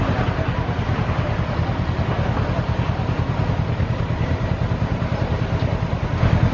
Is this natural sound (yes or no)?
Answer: yes